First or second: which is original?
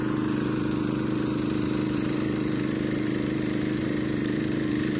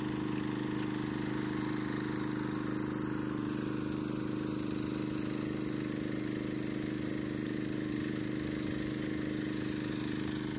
second